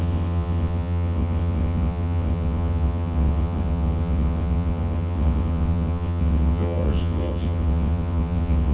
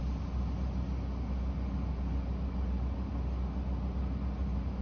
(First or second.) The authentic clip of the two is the second